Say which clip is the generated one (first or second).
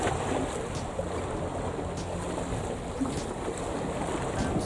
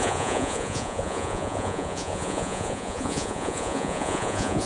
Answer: second